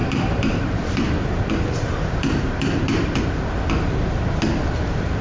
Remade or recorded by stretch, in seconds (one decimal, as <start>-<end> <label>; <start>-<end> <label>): 0.0-3.1 remade; 3.1-5.2 recorded